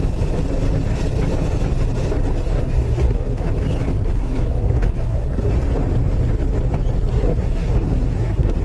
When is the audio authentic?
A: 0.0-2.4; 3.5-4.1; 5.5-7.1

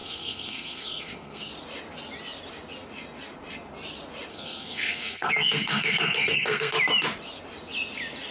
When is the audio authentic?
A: 1.5-4.3; 6.7-8.3

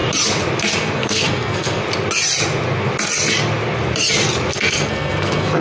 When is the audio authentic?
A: 0.0-0.7; 1.8-4.5

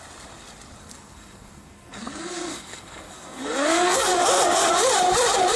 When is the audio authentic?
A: 0.0-0.8; 4.2-5.6

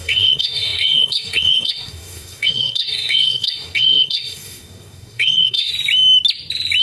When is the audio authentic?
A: 5.7-6.8

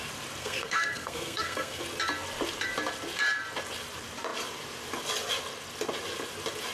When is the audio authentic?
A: 0.0-0.4; 1.8-6.7